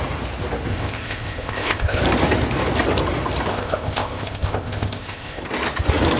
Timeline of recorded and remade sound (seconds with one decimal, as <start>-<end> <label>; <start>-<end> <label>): 0.0-0.7 recorded; 0.7-2.0 remade; 2.0-3.5 recorded; 3.5-5.4 remade; 5.4-6.2 recorded